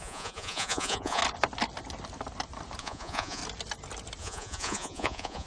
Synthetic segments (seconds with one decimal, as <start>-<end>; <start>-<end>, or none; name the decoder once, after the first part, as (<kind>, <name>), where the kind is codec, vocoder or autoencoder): 0.0-1.2 (vocoder, Vocos); 2.8-3.4; 4.2-5.5